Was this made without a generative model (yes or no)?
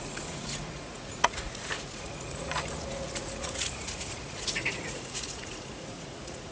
no